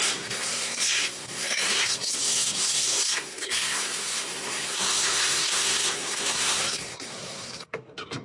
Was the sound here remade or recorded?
remade